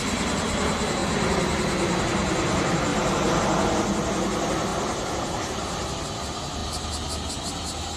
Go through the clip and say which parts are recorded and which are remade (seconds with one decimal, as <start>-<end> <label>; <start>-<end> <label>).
0.0-1.0 recorded; 1.0-2.0 remade; 2.0-2.9 recorded; 2.9-3.4 remade; 3.4-4.7 recorded; 4.7-6.0 remade; 6.0-8.0 recorded